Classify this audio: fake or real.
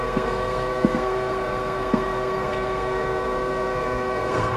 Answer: fake